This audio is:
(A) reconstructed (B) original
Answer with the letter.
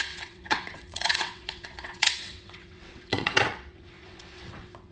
A